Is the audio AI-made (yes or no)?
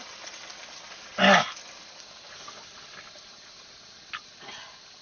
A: no